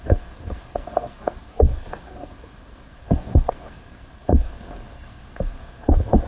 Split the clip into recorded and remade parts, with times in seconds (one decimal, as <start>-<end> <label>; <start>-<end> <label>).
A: 0.0-6.3 remade